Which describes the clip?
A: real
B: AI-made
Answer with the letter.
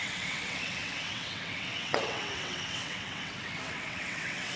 B